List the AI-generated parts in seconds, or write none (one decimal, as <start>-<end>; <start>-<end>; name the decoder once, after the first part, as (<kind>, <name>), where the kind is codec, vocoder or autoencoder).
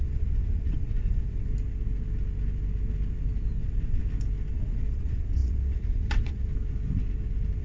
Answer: 0.0-1.5 (vocoder, WaveNeXt); 3.6-4.0; 4.5-6.5